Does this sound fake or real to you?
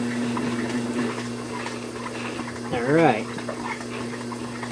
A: real